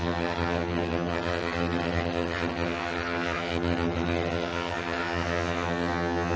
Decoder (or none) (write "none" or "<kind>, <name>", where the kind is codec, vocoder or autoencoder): vocoder, HiFi-GAN